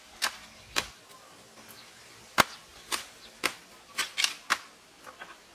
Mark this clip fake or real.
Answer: real